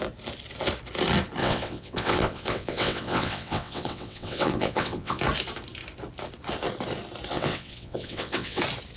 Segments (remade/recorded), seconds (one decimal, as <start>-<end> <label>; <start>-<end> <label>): 0.0-1.4 recorded; 1.4-5.2 remade; 5.2-7.3 recorded; 7.3-8.6 remade; 8.6-9.0 recorded